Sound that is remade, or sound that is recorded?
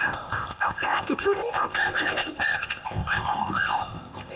remade